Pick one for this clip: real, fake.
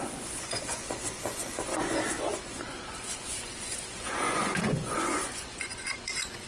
fake